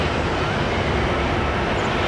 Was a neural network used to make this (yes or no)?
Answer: no